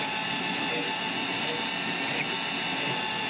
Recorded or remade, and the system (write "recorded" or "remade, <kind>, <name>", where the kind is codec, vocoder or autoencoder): recorded